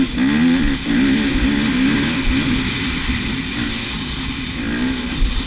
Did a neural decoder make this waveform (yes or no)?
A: no